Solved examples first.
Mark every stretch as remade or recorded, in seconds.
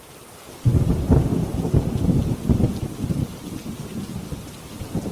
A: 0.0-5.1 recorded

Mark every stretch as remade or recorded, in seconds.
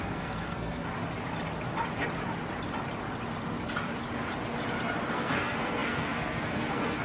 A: 0.0-0.9 remade; 0.9-5.1 recorded; 5.1-7.0 remade